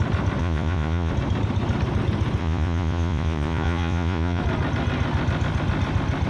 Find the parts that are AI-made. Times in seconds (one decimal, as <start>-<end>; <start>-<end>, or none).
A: 0.4-1.1; 2.4-4.4